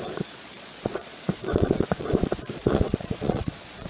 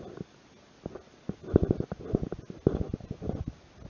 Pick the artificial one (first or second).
first